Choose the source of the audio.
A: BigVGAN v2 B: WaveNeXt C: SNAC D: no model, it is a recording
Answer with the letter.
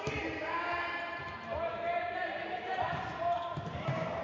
A